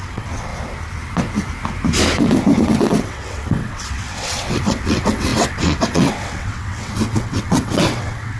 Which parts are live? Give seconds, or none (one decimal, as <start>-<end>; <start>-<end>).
0.5-3.0